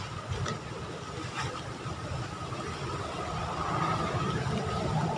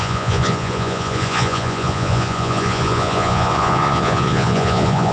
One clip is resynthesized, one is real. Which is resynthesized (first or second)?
second